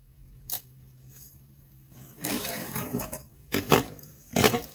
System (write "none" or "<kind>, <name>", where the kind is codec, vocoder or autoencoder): codec, DAC